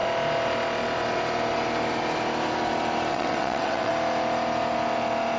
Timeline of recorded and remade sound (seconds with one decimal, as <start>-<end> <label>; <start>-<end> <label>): 0.0-3.1 recorded; 3.1-3.9 remade; 3.9-5.4 recorded

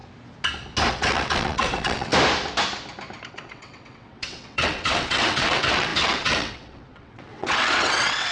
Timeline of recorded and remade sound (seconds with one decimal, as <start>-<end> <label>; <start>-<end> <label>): 0.0-0.9 recorded; 0.9-2.1 remade; 2.1-3.3 recorded; 3.3-8.3 remade

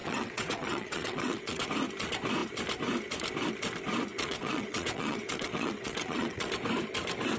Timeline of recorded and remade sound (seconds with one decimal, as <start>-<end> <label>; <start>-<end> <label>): 0.0-1.7 remade; 1.7-4.1 recorded; 4.1-6.5 remade; 6.5-7.4 recorded

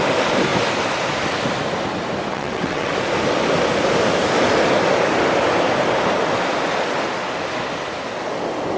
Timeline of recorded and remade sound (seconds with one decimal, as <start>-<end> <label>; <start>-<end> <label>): 0.0-2.3 recorded; 2.3-2.9 remade; 2.9-8.8 recorded